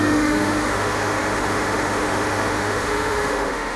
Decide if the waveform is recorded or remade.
remade